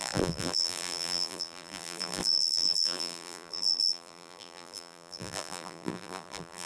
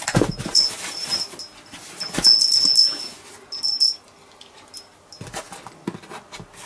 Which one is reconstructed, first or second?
first